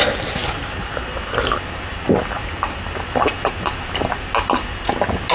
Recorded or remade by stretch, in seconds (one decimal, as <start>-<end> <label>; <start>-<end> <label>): 0.0-5.3 recorded